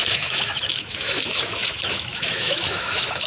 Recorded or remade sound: remade